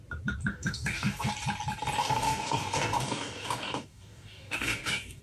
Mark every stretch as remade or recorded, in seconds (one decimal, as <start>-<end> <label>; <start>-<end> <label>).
0.0-0.5 recorded; 0.5-1.3 remade; 1.3-2.0 recorded; 2.0-5.2 remade

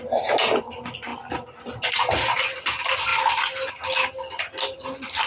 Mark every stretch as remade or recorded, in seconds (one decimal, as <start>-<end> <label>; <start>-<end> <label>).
0.0-5.3 recorded

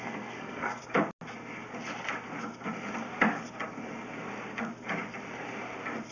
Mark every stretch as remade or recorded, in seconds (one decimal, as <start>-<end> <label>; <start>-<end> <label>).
0.0-0.8 remade; 0.8-6.1 recorded

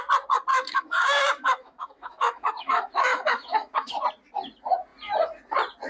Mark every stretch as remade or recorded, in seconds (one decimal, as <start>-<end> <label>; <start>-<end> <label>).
0.0-0.5 recorded; 0.5-3.9 remade; 3.9-5.9 recorded

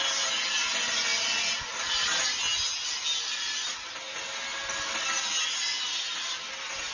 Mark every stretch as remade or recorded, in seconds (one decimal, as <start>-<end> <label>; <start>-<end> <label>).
0.0-6.9 recorded

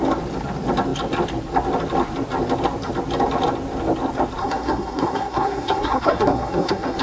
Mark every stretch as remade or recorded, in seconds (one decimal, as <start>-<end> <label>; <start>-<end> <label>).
0.0-4.4 recorded; 4.4-7.0 remade